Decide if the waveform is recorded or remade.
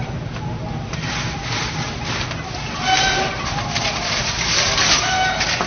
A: recorded